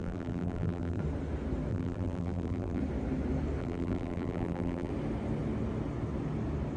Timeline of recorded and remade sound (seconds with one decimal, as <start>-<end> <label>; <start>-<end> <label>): 0.0-1.0 remade; 1.0-1.7 recorded; 1.7-2.8 remade; 2.8-3.6 recorded; 3.6-4.9 remade; 4.9-6.8 recorded